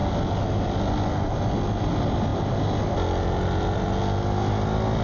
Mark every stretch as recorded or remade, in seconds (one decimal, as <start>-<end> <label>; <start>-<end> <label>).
0.0-5.0 recorded